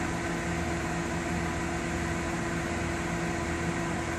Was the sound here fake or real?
fake